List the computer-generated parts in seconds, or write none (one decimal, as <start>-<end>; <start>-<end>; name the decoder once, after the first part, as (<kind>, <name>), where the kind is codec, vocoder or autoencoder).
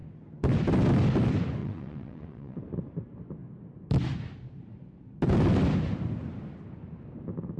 1.6-2.6 (vocoder, WaveNeXt)